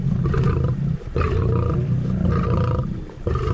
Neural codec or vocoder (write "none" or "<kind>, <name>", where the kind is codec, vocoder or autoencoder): none